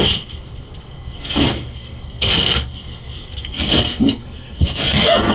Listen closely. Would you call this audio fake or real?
fake